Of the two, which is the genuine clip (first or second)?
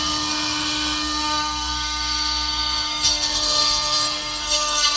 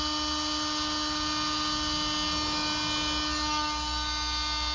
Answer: second